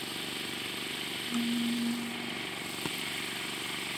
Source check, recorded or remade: recorded